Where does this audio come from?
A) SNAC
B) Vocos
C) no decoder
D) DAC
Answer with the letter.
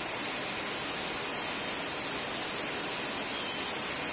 C